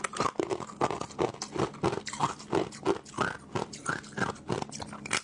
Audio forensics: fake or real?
real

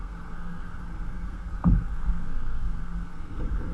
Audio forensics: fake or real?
fake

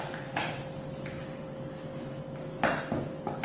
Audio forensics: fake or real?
real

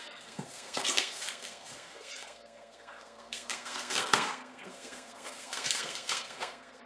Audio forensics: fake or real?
fake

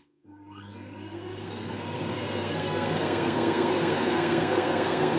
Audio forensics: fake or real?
fake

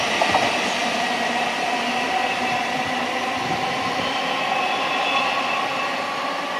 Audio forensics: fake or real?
real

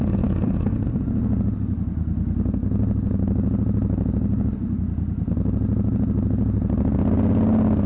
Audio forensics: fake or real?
real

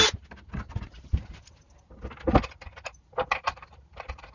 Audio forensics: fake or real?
real